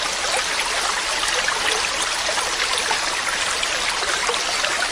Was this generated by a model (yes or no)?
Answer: no